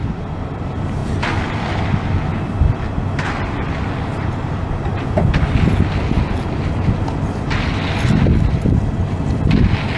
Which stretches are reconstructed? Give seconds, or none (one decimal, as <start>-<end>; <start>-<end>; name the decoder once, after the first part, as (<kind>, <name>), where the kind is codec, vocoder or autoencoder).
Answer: none